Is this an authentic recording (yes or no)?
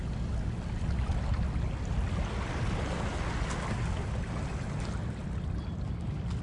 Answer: yes